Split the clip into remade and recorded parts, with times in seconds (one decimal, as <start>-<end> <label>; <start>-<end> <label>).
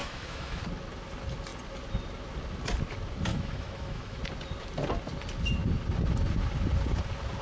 0.0-0.6 remade; 0.6-3.3 recorded; 3.3-4.2 remade; 4.2-7.4 recorded